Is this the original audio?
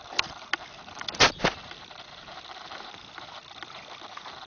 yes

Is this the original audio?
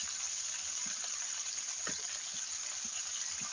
yes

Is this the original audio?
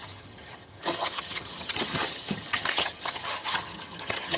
no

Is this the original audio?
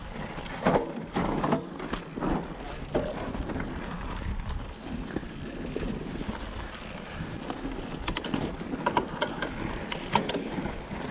yes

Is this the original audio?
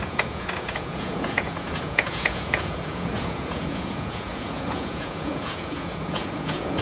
no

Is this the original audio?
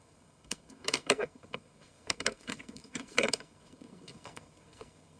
no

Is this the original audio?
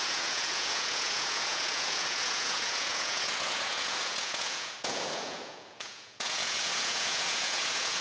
no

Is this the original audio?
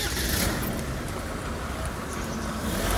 yes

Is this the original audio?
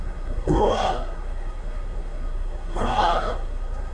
no